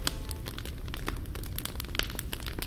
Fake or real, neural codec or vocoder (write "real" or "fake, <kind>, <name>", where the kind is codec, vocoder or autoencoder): real